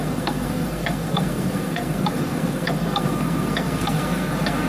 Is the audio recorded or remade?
remade